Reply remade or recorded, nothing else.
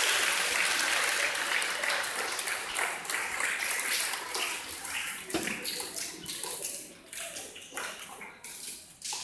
recorded